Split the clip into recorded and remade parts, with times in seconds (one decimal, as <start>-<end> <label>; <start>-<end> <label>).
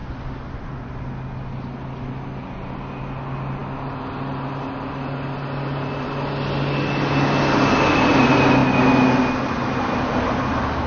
0.0-1.0 remade; 1.0-10.9 recorded